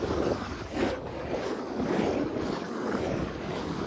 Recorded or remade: remade